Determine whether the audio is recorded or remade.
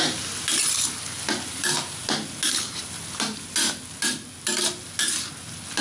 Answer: recorded